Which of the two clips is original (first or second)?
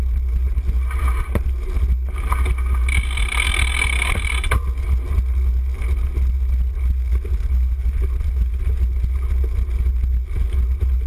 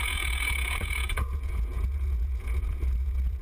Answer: first